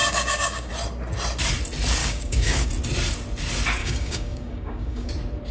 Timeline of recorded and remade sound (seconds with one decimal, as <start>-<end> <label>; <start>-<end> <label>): 0.0-0.7 remade; 0.7-2.0 recorded; 2.0-2.7 remade; 2.7-3.8 recorded; 3.8-5.1 remade; 5.1-5.5 recorded